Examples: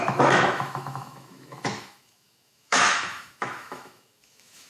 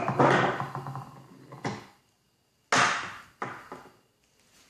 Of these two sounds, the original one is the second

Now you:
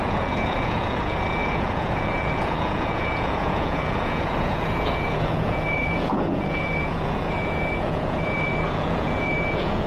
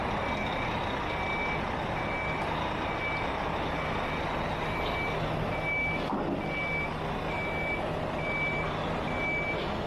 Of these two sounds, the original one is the second